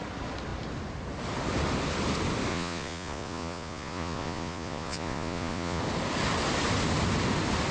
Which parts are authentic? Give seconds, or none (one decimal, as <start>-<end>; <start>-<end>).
0.0-2.5; 5.8-7.7